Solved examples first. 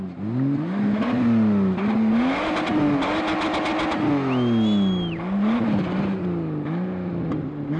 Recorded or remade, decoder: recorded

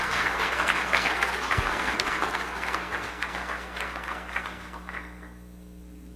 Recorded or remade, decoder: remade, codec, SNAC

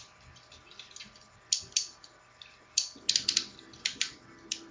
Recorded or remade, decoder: recorded